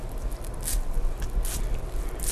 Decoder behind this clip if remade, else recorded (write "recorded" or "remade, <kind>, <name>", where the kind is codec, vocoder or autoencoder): recorded